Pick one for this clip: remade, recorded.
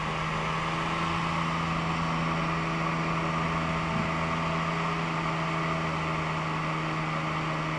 recorded